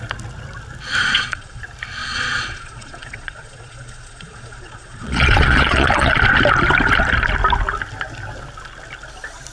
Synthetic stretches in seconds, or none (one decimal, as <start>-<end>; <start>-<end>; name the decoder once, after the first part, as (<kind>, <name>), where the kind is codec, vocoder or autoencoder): 1.0-1.6 (vocoder, Vocos); 2.0-6.2